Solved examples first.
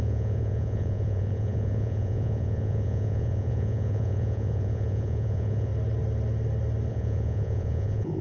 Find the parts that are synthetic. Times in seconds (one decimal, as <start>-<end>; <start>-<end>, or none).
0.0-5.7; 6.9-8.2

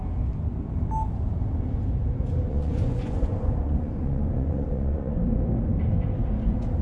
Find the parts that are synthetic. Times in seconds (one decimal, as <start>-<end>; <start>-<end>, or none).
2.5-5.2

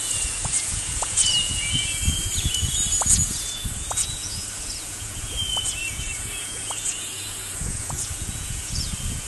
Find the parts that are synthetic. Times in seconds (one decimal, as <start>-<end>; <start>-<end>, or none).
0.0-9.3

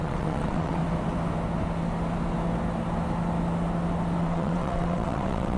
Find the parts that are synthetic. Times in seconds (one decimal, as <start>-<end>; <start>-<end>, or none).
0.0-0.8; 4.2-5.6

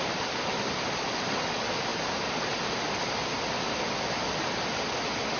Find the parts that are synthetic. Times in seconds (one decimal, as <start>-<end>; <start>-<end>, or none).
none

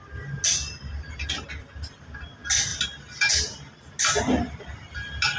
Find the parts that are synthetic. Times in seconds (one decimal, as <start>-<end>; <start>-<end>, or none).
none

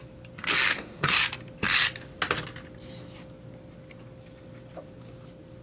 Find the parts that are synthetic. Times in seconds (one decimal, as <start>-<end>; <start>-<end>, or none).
0.7-1.2